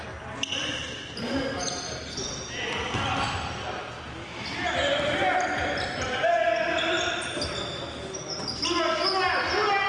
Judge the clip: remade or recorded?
recorded